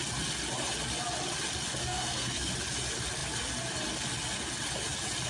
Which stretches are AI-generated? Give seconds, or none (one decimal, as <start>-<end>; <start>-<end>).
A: 1.8-2.5